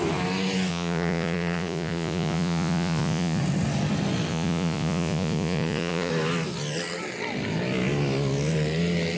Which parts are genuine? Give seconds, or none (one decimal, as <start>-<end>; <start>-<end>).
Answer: 0.0-0.7; 3.4-4.3; 6.1-9.2